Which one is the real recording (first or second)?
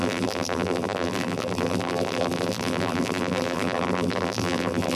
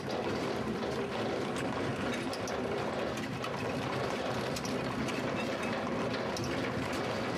second